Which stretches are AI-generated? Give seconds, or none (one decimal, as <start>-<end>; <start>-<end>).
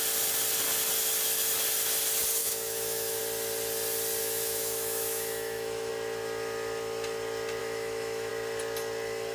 2.4-3.2; 4.2-5.9; 7.6-8.3